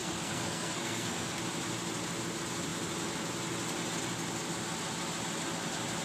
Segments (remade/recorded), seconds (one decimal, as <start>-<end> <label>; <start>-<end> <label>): 0.0-1.4 remade; 1.4-6.0 recorded